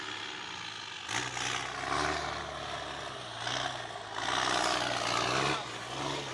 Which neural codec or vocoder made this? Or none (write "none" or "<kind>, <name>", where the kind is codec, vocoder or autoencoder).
none